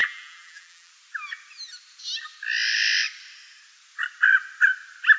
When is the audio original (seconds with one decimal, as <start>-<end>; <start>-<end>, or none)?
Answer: 0.9-5.2